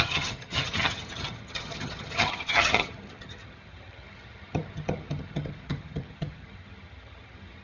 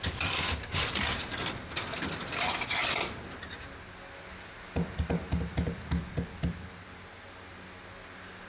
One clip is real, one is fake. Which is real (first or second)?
second